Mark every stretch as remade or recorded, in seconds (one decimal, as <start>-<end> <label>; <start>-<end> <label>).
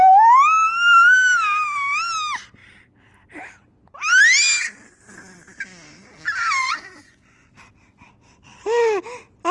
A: 0.0-6.6 recorded; 6.6-7.5 remade; 7.5-9.5 recorded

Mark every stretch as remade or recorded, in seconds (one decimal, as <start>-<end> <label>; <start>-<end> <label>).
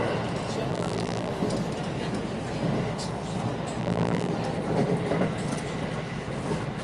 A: 0.0-0.7 recorded; 0.7-1.3 remade; 1.3-3.8 recorded; 3.8-4.3 remade; 4.3-6.8 recorded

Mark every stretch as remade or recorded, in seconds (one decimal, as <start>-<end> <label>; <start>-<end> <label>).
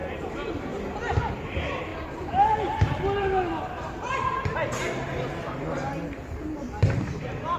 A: 0.0-7.6 recorded